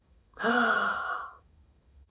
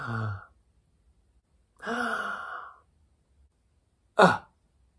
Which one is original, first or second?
second